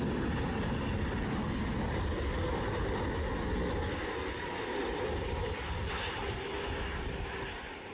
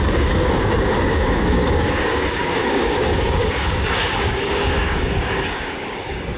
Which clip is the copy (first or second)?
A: second